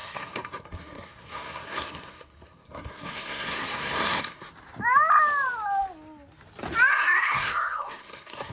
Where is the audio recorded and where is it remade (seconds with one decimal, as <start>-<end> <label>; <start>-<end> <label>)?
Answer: 0.0-4.5 remade; 4.5-6.9 recorded; 6.9-8.5 remade